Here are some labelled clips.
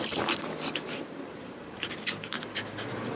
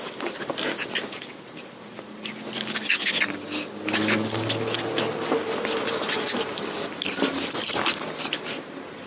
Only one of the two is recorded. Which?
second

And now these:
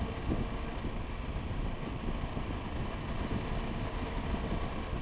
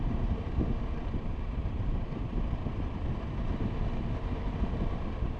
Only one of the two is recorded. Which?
first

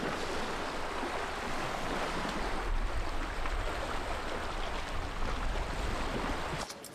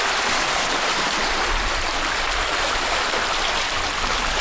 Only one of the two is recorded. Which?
first